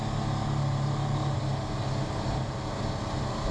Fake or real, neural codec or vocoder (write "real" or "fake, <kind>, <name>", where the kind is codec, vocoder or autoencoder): real